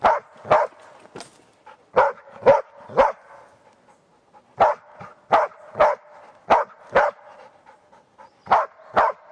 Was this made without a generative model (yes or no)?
yes